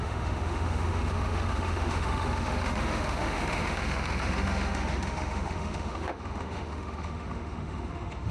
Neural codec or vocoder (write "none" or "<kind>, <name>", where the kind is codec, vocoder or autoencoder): autoencoder, DAC-VAE